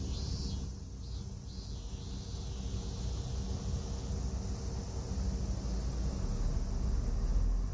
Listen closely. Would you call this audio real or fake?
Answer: real